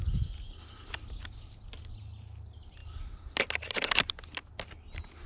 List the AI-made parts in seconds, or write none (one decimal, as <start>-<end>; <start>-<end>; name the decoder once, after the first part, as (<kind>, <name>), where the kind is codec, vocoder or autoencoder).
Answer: none